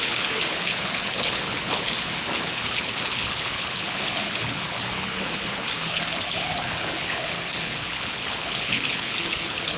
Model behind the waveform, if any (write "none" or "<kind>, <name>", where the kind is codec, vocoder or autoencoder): codec, HILCodec